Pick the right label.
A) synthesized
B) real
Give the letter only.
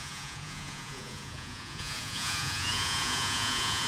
A